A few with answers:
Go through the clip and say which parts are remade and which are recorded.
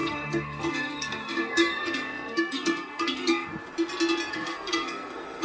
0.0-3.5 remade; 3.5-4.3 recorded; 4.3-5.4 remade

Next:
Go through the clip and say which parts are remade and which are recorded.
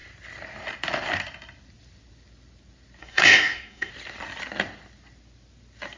0.0-3.0 recorded; 3.0-3.9 remade; 3.9-6.0 recorded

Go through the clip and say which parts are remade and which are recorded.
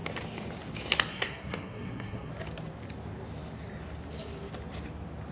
0.0-1.1 recorded; 1.1-2.3 remade; 2.3-5.3 recorded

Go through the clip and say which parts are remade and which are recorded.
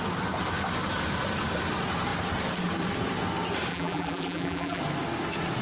0.0-3.7 recorded; 3.7-4.8 remade; 4.8-5.6 recorded